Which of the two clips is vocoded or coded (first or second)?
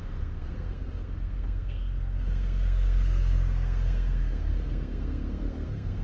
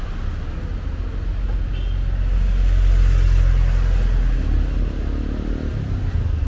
first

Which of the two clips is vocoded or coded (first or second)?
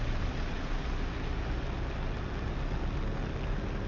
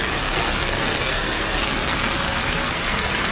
second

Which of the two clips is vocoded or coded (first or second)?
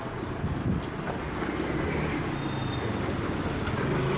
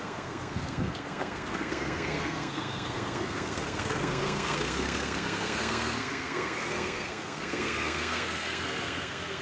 second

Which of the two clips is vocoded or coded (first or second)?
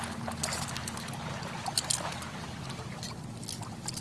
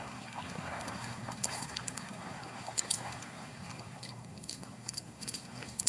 second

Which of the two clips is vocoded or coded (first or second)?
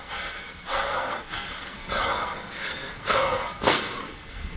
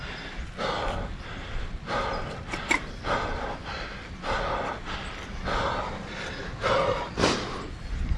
first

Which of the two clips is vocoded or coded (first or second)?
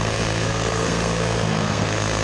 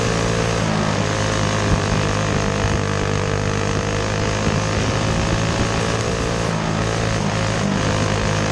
first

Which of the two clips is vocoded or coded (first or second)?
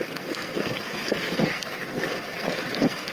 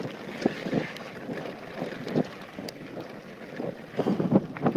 first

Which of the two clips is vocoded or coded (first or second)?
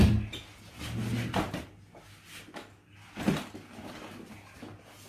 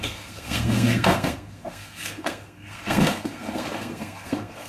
second